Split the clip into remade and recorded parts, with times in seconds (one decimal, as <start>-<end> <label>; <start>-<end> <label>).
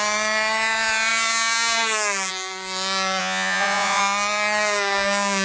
0.0-3.2 recorded; 3.2-4.0 remade; 4.0-5.4 recorded